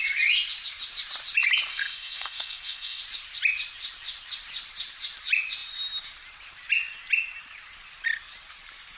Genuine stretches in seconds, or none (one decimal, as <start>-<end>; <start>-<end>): 0.0-1.7; 3.0-9.0

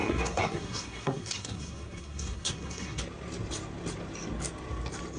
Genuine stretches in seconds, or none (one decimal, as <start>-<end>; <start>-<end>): 3.0-5.2

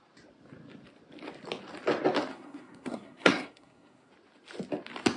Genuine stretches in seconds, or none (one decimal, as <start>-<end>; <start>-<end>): 0.0-2.3; 4.1-5.2

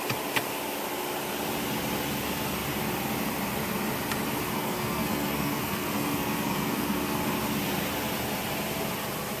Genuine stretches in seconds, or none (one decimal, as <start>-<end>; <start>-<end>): 0.0-4.5; 7.2-9.4